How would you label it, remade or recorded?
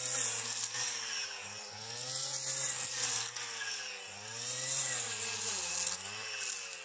recorded